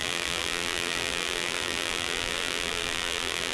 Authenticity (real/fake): fake